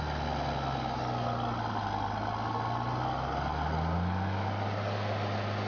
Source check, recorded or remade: recorded